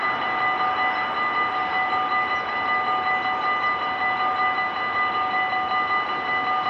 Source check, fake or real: real